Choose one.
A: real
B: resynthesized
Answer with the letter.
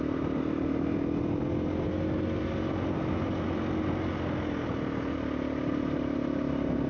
A